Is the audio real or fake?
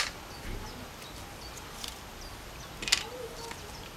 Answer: real